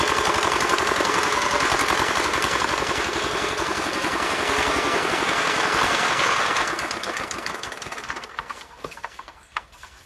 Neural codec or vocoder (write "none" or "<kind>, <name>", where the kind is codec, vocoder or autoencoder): codec, SNAC